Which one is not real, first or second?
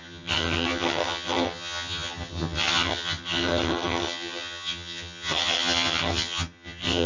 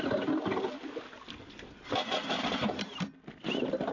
first